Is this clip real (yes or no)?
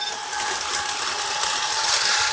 yes